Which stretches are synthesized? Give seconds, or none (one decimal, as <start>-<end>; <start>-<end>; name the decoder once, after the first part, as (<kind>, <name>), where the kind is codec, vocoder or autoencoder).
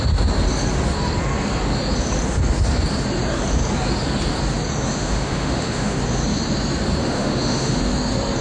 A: 4.9-6.0 (autoencoder, DAC-VAE); 7.0-7.8